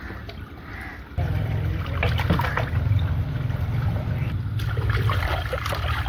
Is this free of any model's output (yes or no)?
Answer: no